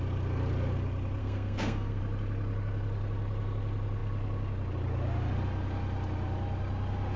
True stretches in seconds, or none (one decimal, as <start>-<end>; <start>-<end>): 0.0-1.2; 2.0-7.2